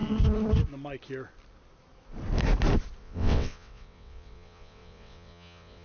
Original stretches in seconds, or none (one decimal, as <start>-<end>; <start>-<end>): 0.0-3.0